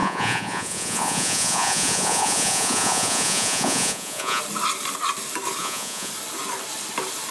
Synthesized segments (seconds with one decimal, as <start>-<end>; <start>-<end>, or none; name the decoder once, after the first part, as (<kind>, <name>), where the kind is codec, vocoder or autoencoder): 0.0-4.4 (vocoder, Vocos); 5.6-6.1